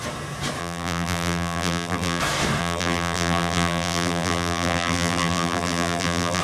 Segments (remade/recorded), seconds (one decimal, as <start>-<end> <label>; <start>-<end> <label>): 0.0-0.6 recorded; 0.6-2.2 remade; 2.2-2.6 recorded; 2.6-6.4 remade